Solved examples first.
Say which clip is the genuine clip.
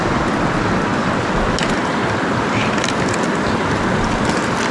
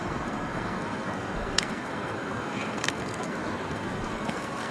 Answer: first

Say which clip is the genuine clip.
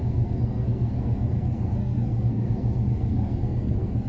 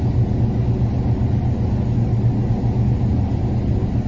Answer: second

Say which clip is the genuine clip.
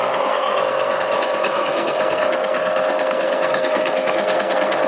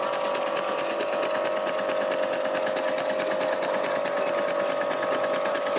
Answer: second